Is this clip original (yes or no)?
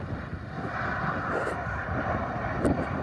yes